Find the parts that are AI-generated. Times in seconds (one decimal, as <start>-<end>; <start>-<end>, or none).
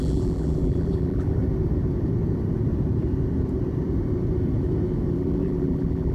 0.0-1.4; 5.1-6.1